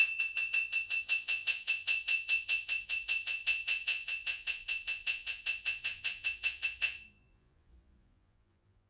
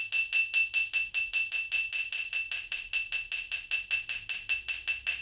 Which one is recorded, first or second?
second